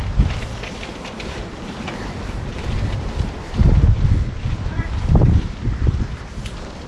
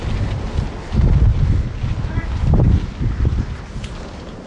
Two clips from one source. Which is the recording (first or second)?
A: second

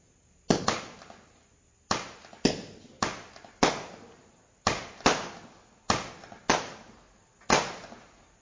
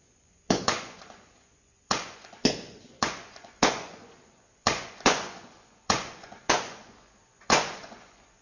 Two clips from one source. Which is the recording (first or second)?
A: first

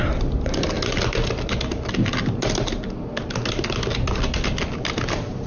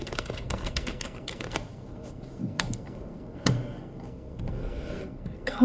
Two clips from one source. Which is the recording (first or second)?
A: first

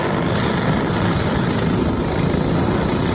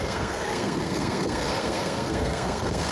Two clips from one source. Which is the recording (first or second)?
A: first